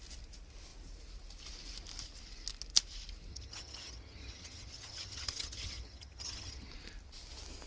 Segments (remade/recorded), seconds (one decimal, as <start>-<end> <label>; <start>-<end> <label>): 0.0-3.3 recorded; 3.3-6.7 remade; 6.7-7.7 recorded